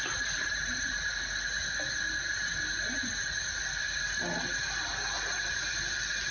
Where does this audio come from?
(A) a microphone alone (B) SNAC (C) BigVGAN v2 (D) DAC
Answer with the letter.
A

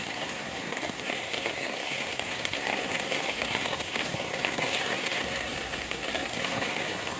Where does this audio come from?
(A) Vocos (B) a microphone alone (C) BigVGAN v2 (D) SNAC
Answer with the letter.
D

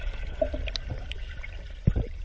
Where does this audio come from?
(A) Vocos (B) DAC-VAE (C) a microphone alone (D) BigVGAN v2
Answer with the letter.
C